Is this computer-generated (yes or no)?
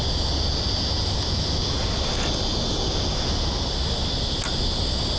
no